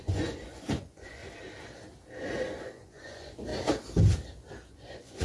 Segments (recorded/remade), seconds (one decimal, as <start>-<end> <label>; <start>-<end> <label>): 0.0-1.2 remade; 1.2-2.2 recorded; 2.2-3.5 remade; 3.5-4.7 recorded; 4.7-5.2 remade